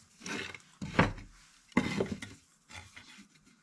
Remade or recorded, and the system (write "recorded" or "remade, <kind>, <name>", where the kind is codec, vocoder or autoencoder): recorded